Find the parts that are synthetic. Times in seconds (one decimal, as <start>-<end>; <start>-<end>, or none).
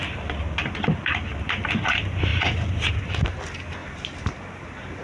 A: 0.0-5.0